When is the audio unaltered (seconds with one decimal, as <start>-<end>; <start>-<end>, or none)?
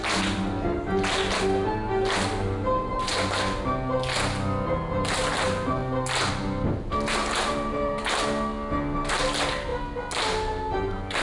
0.0-7.2; 8.0-11.2